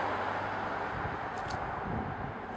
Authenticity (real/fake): real